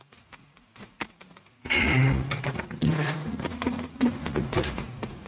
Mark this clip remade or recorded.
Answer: remade